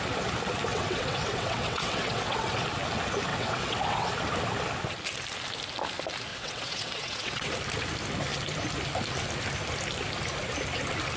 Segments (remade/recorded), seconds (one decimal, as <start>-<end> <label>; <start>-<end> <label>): 0.0-0.7 recorded; 0.7-2.6 remade; 2.6-3.3 recorded; 3.3-4.1 remade; 4.1-6.3 recorded; 6.3-7.5 remade; 7.5-11.2 recorded